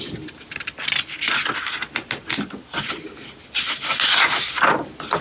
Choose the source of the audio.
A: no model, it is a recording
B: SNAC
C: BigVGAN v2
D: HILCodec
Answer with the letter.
A